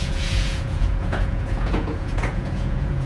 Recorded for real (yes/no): no